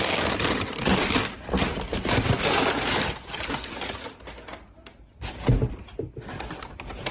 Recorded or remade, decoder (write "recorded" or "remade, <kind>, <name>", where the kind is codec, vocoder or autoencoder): recorded